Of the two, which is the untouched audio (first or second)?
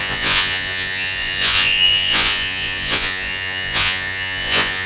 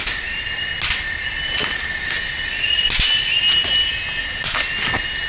second